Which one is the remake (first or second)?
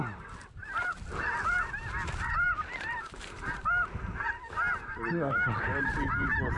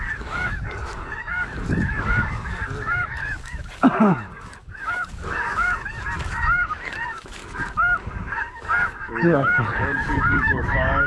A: second